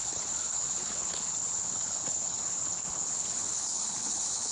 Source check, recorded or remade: remade